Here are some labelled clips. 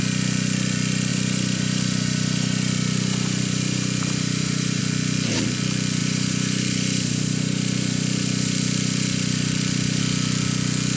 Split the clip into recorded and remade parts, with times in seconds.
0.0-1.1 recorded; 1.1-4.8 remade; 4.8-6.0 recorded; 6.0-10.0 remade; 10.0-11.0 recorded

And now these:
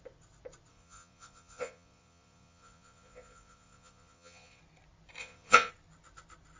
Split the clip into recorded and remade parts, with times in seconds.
0.0-0.7 recorded; 0.7-4.6 remade; 4.6-5.2 recorded; 5.2-5.7 remade; 5.7-6.6 recorded

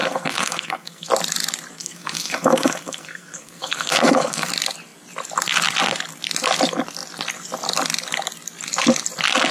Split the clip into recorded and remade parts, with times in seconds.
0.0-1.1 remade; 1.1-1.8 recorded; 1.8-4.5 remade; 4.5-9.5 recorded

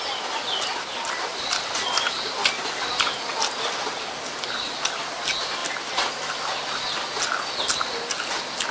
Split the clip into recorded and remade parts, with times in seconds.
0.0-8.7 recorded

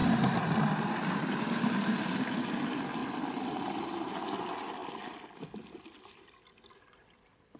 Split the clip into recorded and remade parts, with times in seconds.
0.0-7.6 recorded

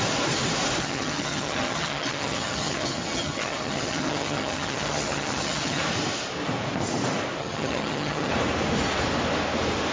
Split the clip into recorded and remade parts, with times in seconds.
0.0-0.8 recorded; 0.8-5.8 remade; 5.8-7.4 recorded; 7.4-8.3 remade; 8.3-9.9 recorded

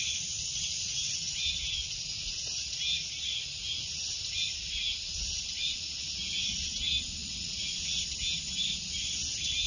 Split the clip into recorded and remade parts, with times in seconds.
0.0-9.7 recorded